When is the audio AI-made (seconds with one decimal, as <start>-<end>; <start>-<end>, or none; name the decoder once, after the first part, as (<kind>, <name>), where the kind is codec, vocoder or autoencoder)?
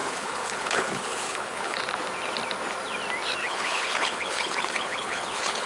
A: 0.0-1.8 (codec, HILCodec); 3.4-5.7